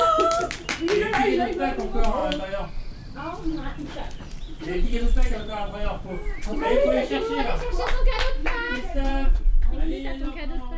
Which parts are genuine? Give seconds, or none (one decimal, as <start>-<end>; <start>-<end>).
0.0-3.8; 7.2-8.4; 9.4-10.8